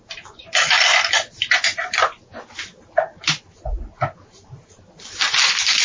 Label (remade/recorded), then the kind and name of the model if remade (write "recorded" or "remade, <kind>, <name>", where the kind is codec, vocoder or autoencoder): recorded